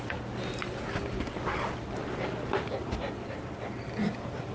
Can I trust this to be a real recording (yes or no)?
yes